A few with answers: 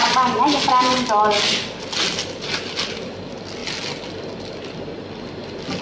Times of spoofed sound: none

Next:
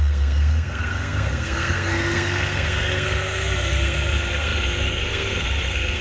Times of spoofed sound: 0.0-6.0 (codec, SNAC)

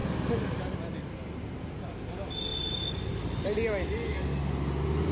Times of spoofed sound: none